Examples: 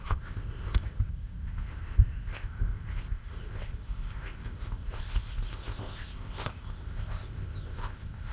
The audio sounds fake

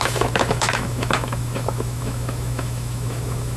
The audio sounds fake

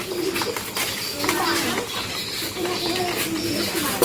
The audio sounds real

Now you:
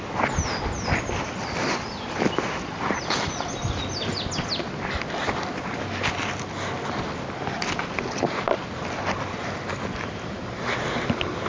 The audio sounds real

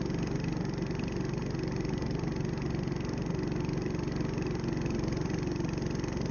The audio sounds real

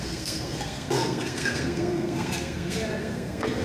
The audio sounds fake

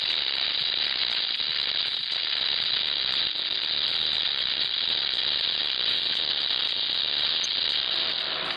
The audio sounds real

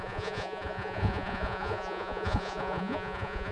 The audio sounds fake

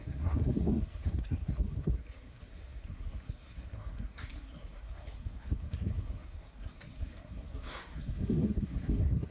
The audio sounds fake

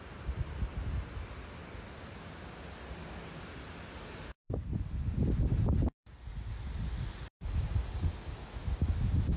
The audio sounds real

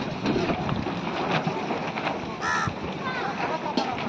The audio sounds real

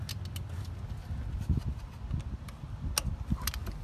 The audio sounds real